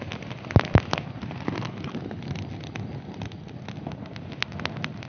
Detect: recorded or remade recorded